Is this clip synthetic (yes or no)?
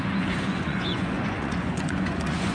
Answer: yes